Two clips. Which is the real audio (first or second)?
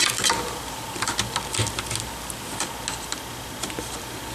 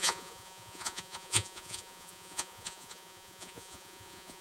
first